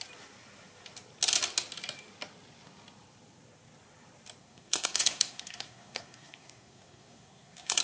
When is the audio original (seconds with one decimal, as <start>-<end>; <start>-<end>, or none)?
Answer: 0.0-4.4